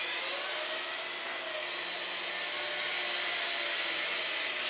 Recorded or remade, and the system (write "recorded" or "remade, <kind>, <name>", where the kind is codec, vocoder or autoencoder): recorded